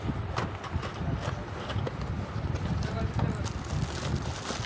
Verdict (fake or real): real